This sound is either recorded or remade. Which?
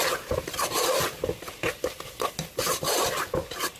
recorded